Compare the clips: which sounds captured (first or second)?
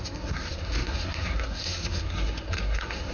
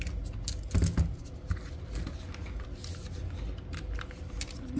second